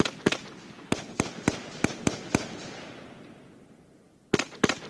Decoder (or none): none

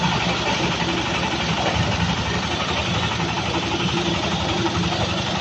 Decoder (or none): vocoder, BigVGAN v2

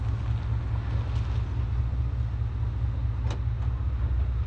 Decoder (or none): none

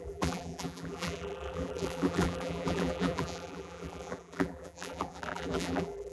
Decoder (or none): vocoder, BigVGAN v2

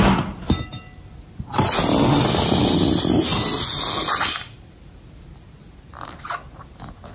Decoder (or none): none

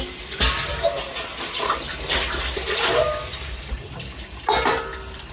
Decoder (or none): none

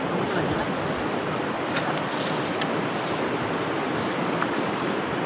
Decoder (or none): none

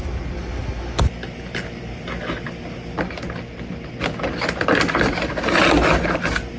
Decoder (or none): none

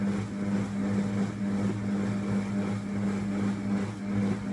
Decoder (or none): none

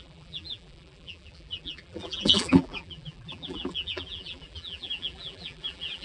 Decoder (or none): vocoder, BigVGAN v2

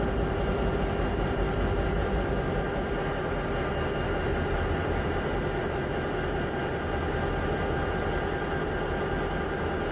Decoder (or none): none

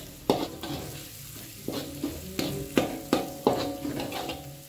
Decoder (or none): none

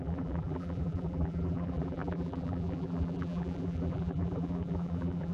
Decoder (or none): vocoder, BigVGAN v2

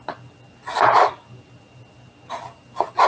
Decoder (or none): none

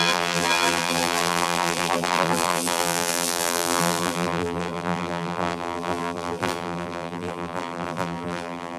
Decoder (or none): vocoder, BigVGAN v2